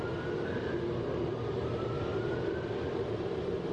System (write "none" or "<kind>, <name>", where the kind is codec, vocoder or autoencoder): none